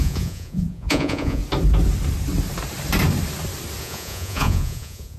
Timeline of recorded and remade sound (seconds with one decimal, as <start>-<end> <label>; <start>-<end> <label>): 0.0-1.4 remade; 1.4-3.8 recorded; 3.8-5.2 remade